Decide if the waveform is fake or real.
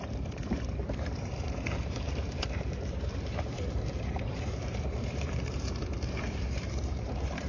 fake